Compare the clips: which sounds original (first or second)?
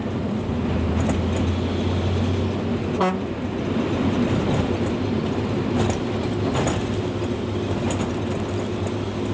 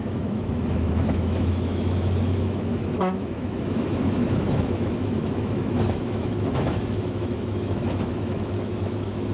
first